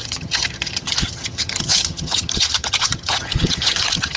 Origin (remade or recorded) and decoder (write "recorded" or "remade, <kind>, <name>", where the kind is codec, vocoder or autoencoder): remade, vocoder, HiFi-GAN